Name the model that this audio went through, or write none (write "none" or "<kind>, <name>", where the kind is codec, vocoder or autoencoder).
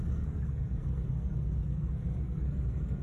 codec, SNAC